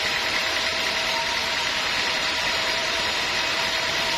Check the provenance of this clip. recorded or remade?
remade